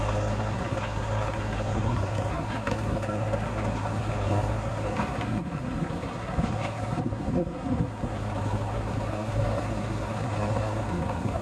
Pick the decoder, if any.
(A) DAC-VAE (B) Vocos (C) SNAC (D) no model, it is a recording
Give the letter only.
C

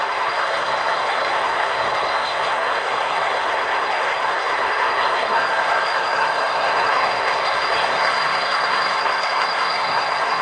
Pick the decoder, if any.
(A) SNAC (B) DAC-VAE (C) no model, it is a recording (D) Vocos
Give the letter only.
A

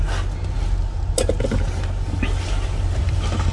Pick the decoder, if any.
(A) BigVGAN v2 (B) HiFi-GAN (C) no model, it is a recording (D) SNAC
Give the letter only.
C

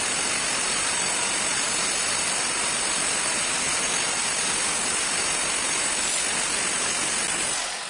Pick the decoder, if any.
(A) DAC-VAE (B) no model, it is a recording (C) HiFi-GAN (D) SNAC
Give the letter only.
B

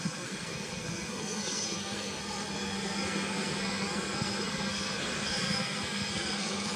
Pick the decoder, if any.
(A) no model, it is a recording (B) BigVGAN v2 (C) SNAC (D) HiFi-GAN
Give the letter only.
C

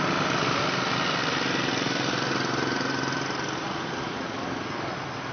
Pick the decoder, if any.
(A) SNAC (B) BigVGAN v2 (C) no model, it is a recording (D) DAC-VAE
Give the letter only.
C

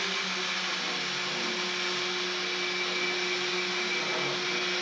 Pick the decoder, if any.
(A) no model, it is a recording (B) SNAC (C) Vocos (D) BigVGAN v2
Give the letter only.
A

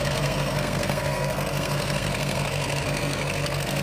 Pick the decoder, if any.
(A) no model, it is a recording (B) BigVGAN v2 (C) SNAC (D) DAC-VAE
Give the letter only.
C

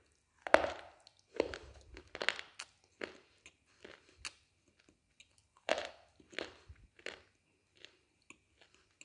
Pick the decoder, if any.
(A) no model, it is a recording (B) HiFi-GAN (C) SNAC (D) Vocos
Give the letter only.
A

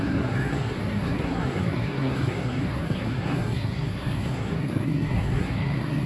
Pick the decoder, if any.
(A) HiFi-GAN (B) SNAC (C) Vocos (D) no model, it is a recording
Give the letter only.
B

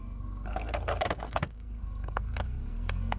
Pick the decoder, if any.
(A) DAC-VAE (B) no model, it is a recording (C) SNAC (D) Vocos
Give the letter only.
C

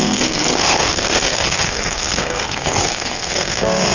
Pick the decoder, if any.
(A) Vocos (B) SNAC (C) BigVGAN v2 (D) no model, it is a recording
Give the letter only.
B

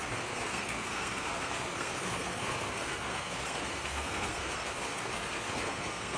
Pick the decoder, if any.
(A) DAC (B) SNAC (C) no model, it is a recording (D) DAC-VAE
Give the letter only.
B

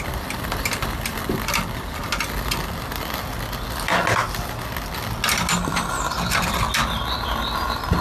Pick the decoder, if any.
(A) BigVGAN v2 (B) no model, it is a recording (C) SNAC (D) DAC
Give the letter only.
B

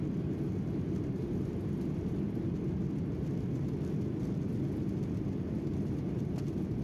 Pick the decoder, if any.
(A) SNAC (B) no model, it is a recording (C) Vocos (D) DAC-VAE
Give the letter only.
B